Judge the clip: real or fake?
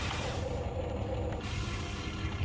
real